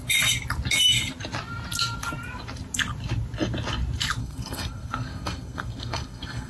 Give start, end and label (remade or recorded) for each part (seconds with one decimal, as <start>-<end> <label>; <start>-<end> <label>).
0.0-4.2 recorded; 4.2-6.5 remade